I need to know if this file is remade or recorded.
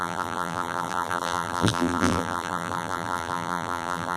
remade